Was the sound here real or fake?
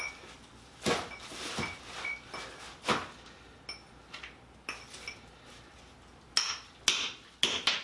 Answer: real